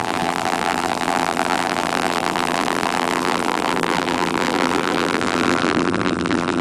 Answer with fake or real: fake